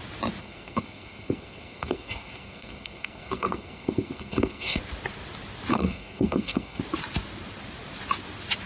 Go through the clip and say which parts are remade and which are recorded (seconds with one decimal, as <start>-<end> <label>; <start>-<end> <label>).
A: 0.0-0.4 recorded; 0.4-4.8 remade; 4.8-5.7 recorded; 5.7-6.8 remade; 6.8-8.7 recorded